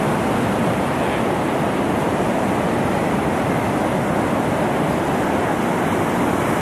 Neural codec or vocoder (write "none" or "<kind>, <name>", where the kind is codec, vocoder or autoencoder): none